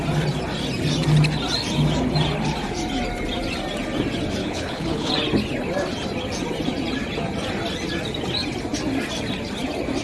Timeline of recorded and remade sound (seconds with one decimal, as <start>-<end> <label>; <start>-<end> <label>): 0.0-4.4 recorded; 4.4-5.1 remade; 5.1-10.0 recorded